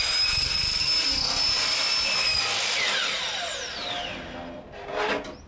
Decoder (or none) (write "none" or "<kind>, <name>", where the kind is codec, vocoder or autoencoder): none